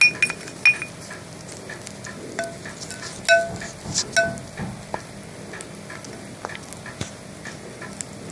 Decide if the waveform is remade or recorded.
recorded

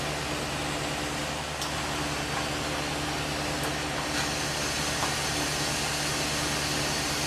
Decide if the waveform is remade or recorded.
recorded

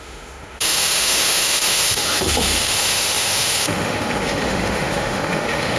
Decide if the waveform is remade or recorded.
remade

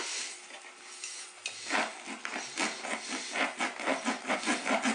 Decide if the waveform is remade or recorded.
recorded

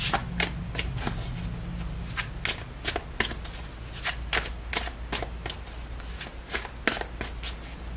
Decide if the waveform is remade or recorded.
recorded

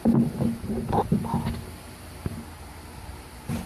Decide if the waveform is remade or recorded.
recorded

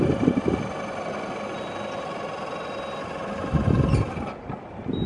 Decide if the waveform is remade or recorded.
recorded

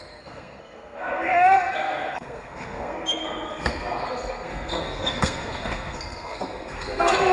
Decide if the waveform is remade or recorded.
remade